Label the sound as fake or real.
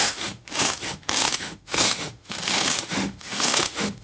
fake